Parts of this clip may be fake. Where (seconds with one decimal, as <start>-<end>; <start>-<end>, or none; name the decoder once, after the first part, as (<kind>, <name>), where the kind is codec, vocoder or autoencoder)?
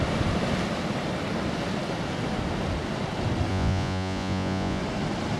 3.5-4.8 (vocoder, Vocos)